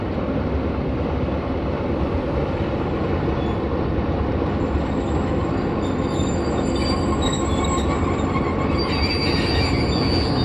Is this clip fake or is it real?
real